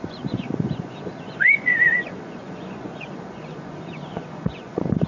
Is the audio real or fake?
fake